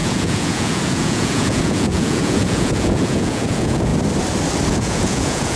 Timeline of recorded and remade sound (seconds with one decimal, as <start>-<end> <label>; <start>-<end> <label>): 0.0-3.9 remade; 3.9-4.7 recorded; 4.7-5.6 remade